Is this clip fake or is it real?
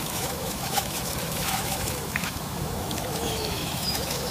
fake